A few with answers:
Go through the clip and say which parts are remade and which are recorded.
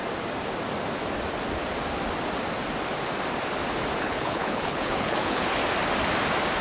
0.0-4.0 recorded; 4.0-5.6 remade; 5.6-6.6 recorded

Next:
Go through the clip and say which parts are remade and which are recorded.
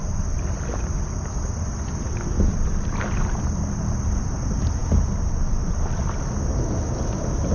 0.0-7.5 recorded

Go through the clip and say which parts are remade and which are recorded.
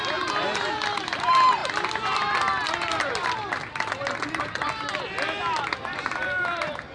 0.0-6.9 recorded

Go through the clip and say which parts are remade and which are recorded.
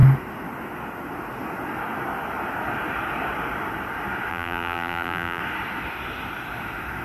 0.0-4.3 recorded; 4.3-5.4 remade; 5.4-7.0 recorded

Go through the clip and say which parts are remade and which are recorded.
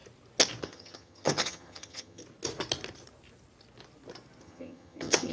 0.0-0.6 recorded; 0.6-2.2 remade; 2.2-4.4 recorded; 4.4-5.3 remade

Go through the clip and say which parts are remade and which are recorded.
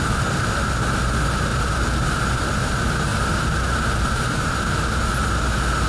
0.0-1.5 recorded; 1.5-2.1 remade; 2.1-3.1 recorded; 3.1-5.1 remade; 5.1-5.9 recorded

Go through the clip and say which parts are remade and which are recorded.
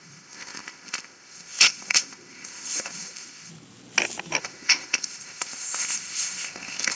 0.0-3.5 remade; 3.5-4.4 recorded; 4.4-6.9 remade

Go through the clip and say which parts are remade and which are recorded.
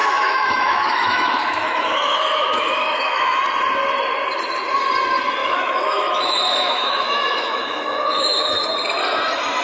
0.0-3.4 remade; 3.4-5.4 recorded; 5.4-8.7 remade; 8.7-9.6 recorded